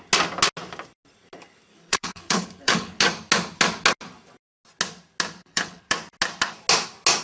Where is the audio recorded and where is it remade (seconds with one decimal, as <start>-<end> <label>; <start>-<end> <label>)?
0.0-1.7 recorded; 1.7-3.0 remade; 3.0-5.4 recorded; 5.4-5.9 remade; 5.9-7.2 recorded